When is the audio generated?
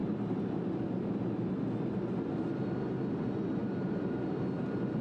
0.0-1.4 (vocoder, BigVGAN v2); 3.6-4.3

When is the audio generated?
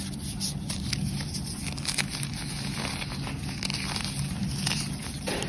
none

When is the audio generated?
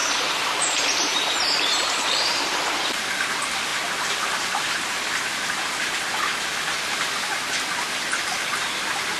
0.0-3.0 (vocoder, BigVGAN v2)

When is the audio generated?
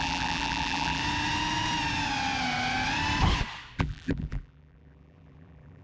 0.0-1.0 (vocoder, BigVGAN v2); 3.8-5.8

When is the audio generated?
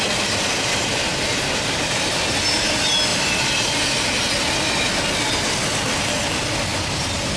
none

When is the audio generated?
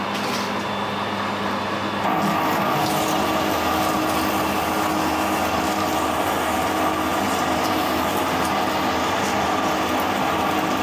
none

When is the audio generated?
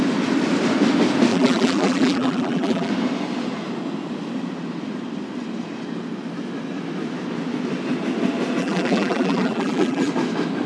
1.3-2.9 (vocoder, BigVGAN v2); 8.6-10.1